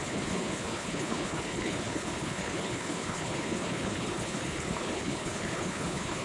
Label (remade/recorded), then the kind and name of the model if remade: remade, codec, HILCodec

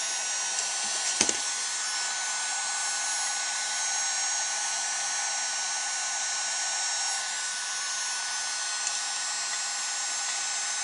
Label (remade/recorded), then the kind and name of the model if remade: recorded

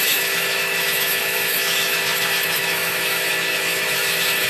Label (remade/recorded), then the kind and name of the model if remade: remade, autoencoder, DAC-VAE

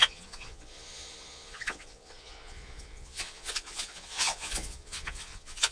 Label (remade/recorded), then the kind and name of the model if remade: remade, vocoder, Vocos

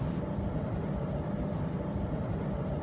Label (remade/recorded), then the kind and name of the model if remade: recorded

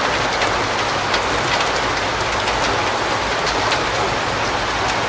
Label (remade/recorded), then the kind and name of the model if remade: recorded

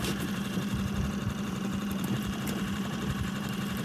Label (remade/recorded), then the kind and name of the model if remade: remade, vocoder, BigVGAN v2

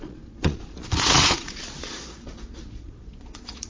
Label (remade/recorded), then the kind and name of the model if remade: remade, vocoder, Vocos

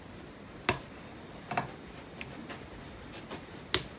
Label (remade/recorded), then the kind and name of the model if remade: recorded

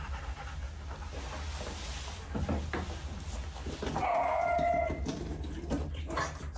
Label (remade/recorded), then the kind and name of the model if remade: recorded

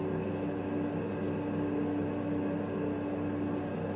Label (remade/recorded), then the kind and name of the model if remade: recorded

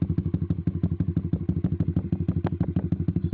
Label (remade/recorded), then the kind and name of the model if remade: recorded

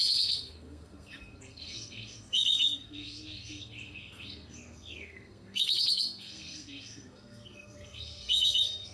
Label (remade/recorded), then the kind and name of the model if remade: remade, codec, SNAC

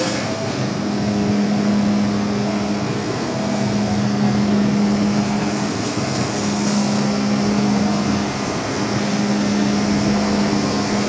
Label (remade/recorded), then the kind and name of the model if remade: remade, codec, SNAC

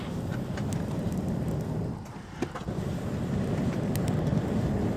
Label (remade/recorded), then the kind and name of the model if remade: recorded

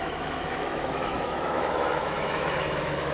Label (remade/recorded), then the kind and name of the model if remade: remade, autoencoder, DAC-VAE